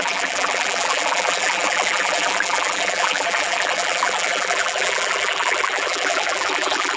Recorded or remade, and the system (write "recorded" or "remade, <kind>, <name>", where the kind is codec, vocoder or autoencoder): remade, vocoder, BigVGAN v2